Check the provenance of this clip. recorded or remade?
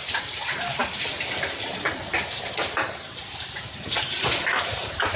remade